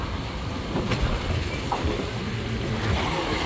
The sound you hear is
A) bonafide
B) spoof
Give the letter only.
A